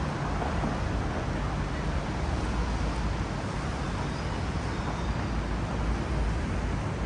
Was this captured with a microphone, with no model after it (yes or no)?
yes